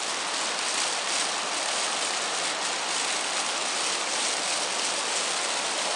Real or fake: real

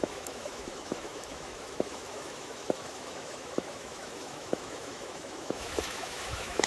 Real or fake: fake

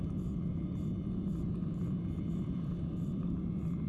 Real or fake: real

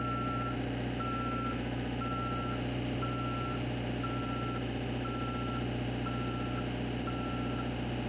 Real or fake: real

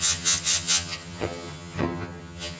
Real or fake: fake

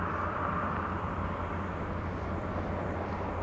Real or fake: fake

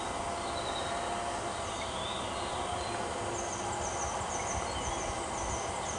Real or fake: real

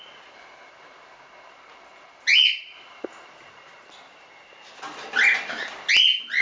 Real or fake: real